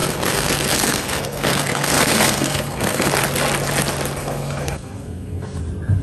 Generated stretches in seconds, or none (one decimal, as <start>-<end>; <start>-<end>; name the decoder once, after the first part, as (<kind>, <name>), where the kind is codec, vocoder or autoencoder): 0.0-3.1 (codec, SNAC); 4.2-5.6